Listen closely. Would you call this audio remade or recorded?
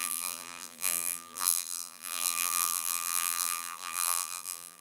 remade